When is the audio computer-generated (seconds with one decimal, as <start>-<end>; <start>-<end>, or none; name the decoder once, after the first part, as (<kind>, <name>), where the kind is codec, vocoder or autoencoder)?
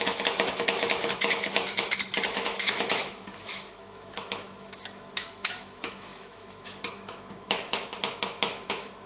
0.0-9.1 (autoencoder, DAC-VAE)